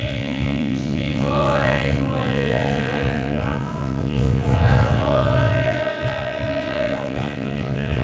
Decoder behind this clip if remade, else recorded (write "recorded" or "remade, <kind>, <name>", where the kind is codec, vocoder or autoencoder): remade, vocoder, WaveNeXt